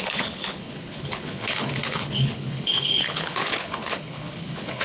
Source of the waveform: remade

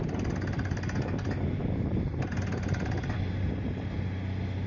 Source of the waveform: recorded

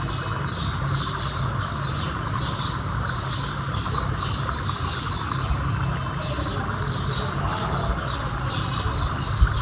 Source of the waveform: recorded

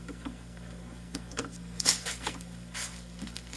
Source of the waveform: remade